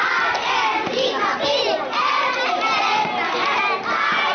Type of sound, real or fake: real